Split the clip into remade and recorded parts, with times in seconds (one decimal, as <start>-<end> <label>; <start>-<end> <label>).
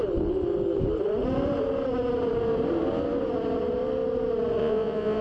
0.0-4.6 recorded; 4.6-5.2 remade